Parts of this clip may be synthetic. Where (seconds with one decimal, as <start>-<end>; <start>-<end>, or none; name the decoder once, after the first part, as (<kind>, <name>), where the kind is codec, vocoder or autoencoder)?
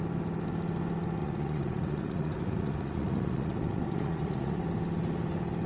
1.2-4.6 (vocoder, Vocos)